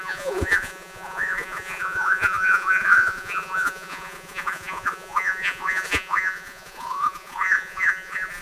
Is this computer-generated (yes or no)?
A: yes